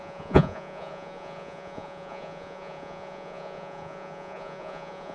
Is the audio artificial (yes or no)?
yes